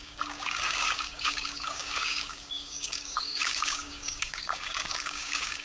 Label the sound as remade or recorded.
remade